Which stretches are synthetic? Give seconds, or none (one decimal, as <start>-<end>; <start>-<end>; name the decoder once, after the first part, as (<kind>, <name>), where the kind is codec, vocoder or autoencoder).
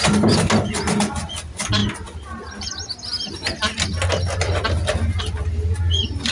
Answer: none